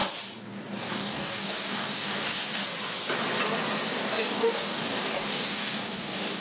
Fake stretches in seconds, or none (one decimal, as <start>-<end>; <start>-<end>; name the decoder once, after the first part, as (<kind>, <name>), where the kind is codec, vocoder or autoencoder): 0.8-2.6 (codec, DAC); 4.0-6.4

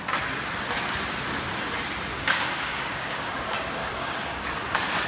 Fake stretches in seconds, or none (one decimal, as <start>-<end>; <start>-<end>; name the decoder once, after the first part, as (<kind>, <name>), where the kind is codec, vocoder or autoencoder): 2.1-3.3 (codec, DAC); 3.8-4.4

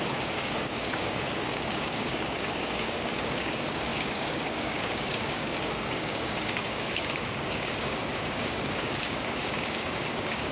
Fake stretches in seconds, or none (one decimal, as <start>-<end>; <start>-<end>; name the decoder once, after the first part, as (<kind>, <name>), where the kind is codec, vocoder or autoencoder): 0.0-10.5 (codec, DAC)

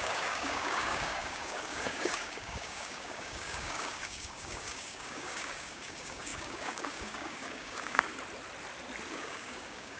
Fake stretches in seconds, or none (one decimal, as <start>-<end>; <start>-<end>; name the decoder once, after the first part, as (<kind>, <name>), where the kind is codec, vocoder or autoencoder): 0.0-8.1 (codec, DAC); 9.1-10.0

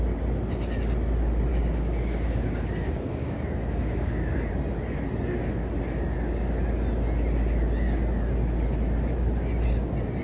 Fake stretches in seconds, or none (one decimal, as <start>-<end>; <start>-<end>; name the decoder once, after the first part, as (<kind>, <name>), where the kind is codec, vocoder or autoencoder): 1.5-4.5 (codec, DAC)

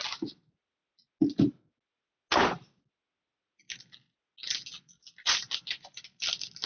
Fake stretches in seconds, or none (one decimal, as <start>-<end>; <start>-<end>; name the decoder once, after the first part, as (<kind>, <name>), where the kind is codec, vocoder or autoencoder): none